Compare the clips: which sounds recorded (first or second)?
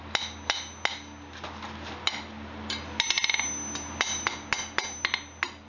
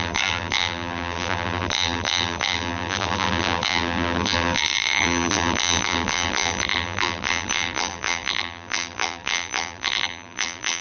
first